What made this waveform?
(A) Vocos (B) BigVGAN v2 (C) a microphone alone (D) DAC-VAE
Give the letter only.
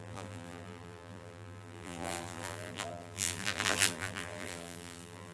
B